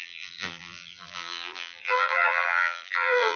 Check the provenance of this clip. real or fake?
fake